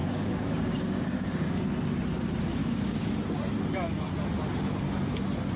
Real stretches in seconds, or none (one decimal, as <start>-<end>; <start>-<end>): 1.6-2.6; 3.1-5.6